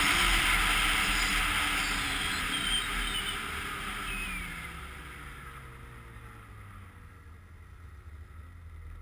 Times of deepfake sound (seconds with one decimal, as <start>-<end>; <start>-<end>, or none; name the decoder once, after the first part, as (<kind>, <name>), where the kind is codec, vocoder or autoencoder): none